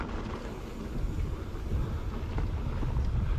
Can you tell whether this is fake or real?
real